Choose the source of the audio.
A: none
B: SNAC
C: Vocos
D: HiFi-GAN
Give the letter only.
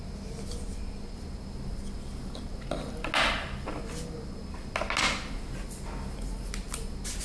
A